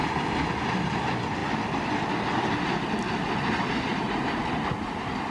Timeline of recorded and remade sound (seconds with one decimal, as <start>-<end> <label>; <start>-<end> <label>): 0.0-0.6 remade; 0.6-3.9 recorded; 3.9-5.3 remade